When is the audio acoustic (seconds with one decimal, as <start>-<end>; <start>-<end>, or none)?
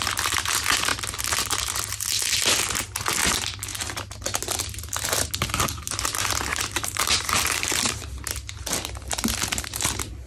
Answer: 0.0-6.5; 8.0-10.3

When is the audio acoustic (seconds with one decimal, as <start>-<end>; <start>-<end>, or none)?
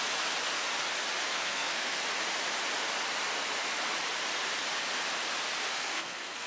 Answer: 0.0-1.3; 2.0-5.7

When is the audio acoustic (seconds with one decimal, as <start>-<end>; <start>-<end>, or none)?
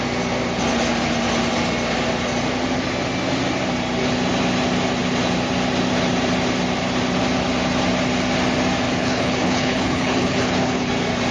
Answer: 0.0-9.0; 10.9-11.3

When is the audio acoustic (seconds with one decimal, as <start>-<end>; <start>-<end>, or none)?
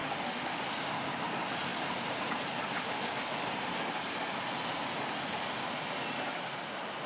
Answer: 0.6-7.1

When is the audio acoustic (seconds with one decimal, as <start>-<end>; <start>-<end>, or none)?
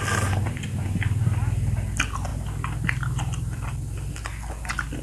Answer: 0.0-5.0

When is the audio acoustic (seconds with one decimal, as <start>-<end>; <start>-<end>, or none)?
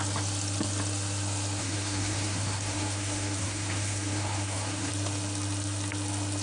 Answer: 0.0-1.6; 4.9-6.4